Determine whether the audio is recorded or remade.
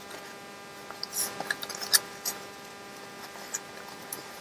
recorded